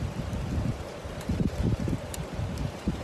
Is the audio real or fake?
fake